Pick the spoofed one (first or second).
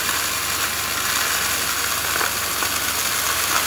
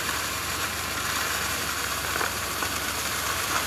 second